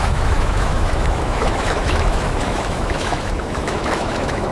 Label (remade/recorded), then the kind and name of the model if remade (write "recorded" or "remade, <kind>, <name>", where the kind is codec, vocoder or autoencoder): remade, autoencoder, DAC-VAE